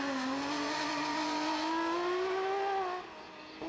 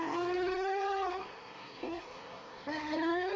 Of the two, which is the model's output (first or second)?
second